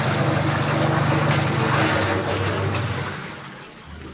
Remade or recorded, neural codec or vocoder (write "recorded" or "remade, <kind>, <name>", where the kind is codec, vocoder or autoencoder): recorded